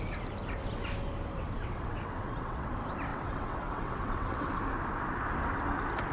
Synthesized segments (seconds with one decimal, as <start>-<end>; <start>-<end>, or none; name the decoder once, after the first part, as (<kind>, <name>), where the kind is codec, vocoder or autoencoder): 1.6-2.7 (vocoder, WaveNeXt); 3.1-4.5

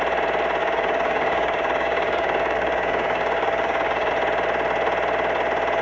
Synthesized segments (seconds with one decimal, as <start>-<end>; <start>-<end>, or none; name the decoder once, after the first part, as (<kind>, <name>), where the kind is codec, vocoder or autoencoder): 0.6-4.1 (codec, DAC)

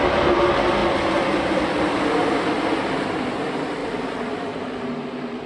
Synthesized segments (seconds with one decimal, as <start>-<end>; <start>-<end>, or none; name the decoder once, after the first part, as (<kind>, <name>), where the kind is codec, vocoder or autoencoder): 0.8-3.3 (vocoder, BigVGAN v2); 3.8-4.8

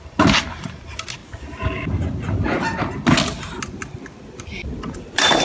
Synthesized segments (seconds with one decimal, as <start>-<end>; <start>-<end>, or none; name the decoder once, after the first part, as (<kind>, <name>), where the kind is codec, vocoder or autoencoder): none